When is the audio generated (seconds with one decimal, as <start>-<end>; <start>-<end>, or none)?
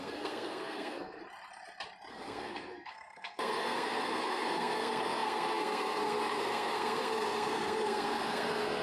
0.0-1.2; 2.1-8.8